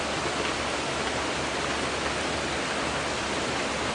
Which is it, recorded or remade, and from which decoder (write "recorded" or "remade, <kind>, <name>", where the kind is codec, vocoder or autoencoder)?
recorded